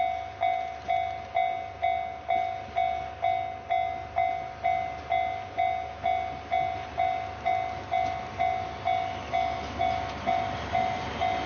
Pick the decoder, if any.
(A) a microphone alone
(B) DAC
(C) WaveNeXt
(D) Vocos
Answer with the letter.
A